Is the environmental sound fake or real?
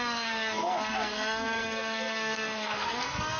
fake